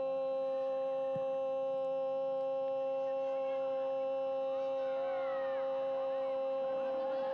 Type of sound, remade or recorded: recorded